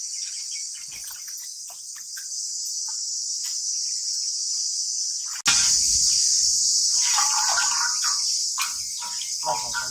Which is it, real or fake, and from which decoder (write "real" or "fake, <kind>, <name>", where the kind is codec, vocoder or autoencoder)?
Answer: real